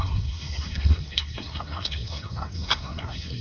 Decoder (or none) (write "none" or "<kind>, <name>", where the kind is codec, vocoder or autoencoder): codec, SNAC